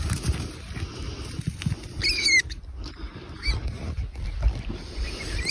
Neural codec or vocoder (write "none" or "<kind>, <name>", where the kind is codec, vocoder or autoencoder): none